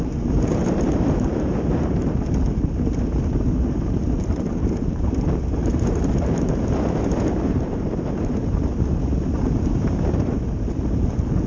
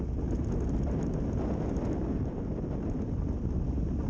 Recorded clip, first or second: second